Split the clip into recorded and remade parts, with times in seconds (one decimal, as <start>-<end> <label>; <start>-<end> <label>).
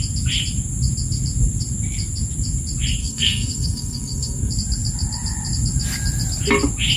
0.0-3.0 recorded; 3.0-4.5 remade; 4.5-7.0 recorded